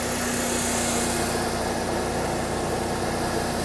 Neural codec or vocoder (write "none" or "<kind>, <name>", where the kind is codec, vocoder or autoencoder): none